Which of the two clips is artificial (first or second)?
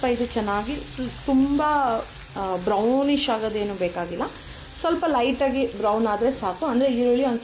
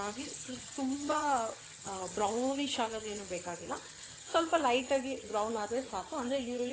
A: second